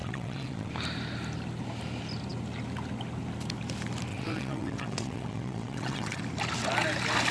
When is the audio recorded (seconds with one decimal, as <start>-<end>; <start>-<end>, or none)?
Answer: 0.7-4.1; 6.2-7.3